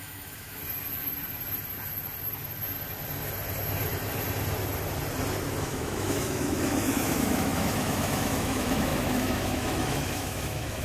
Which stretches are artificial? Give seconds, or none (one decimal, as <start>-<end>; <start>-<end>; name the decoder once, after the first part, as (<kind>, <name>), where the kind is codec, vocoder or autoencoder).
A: 0.0-0.6 (autoencoder, DAC-VAE); 5.6-10.8